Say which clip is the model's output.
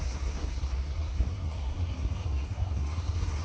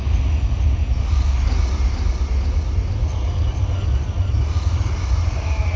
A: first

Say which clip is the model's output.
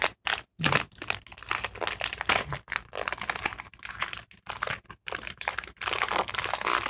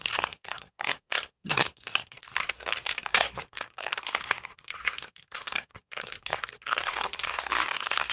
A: second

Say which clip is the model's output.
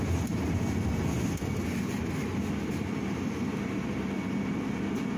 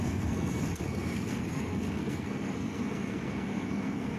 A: second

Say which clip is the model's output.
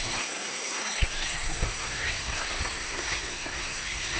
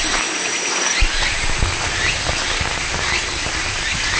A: first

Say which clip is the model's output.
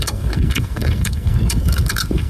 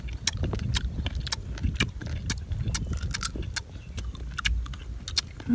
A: first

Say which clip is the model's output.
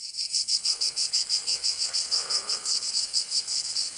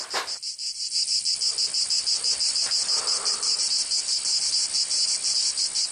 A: first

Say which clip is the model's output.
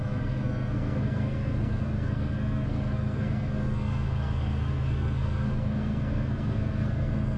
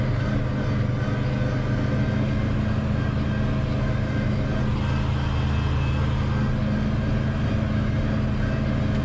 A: first